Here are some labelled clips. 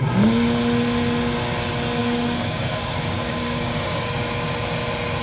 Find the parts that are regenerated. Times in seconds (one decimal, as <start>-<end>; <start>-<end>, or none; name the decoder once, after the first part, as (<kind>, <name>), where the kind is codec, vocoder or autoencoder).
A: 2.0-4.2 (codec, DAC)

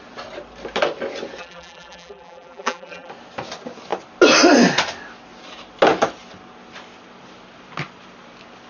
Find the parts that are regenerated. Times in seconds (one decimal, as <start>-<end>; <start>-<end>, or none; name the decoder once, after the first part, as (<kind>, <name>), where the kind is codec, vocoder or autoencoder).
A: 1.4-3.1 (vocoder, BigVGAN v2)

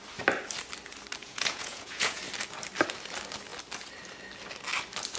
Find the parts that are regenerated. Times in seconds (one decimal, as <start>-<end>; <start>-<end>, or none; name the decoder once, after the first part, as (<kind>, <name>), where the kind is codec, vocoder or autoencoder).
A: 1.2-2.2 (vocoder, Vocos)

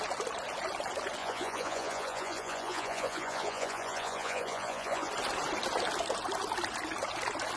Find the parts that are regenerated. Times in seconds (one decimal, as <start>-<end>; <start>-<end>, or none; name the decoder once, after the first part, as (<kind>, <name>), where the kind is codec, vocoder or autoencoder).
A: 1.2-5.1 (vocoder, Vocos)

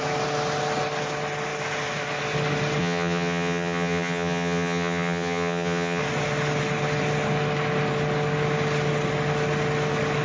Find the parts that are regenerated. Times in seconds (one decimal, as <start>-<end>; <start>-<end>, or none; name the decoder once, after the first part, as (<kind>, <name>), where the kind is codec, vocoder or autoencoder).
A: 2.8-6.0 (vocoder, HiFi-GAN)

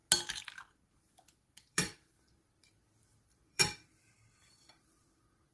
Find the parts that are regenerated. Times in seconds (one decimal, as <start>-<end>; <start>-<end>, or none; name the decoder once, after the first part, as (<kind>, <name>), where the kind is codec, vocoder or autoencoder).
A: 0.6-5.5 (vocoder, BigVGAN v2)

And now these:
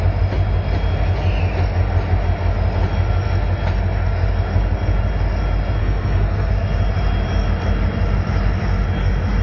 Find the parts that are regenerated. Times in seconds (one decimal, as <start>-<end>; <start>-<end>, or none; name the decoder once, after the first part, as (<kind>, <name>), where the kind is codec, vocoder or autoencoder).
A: 5.8-6.5 (codec, SNAC)

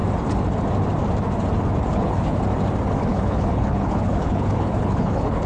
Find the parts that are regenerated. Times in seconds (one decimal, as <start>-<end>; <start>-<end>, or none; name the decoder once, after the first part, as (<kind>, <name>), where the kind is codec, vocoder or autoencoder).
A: 1.9-2.4 (codec, HILCodec); 3.1-5.5